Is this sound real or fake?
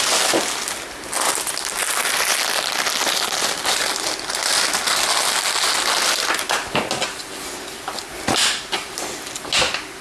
real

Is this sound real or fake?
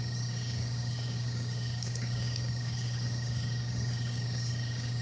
fake